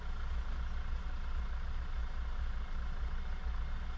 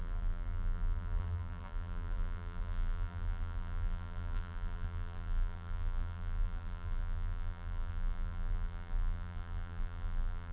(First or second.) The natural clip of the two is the first